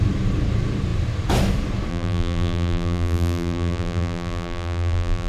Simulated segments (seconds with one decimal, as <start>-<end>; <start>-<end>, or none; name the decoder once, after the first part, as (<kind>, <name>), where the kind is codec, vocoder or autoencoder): 1.9-5.3 (vocoder, BigVGAN v2)